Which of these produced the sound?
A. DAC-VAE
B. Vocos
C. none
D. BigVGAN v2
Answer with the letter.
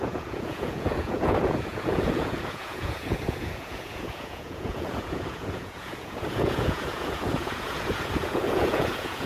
B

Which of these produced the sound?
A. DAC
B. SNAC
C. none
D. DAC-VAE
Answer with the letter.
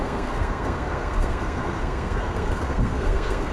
B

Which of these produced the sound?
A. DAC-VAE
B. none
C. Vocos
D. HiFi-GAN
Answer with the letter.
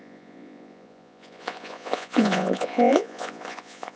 C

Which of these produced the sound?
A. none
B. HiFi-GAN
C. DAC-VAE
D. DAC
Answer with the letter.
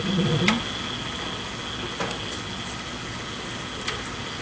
A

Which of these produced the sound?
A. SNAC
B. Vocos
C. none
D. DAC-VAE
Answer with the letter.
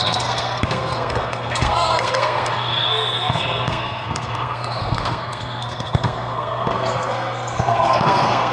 A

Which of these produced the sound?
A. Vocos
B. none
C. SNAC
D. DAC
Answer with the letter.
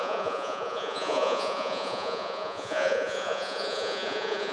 A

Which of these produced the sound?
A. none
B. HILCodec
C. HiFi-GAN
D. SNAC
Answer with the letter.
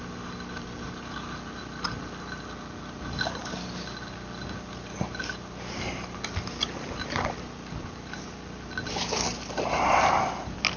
A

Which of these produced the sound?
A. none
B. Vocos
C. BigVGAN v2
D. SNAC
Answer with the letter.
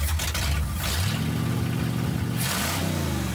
A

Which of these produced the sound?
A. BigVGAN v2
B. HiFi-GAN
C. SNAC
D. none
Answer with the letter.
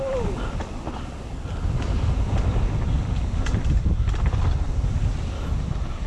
D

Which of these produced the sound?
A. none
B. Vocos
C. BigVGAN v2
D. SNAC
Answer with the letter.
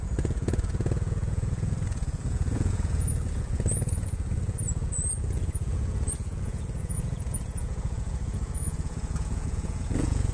B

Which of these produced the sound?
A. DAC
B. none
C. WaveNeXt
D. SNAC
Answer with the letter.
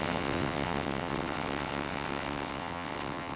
C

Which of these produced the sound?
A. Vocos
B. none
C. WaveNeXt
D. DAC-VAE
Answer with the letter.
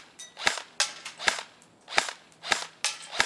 B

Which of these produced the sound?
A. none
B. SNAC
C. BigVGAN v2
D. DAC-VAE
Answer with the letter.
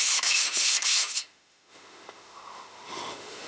D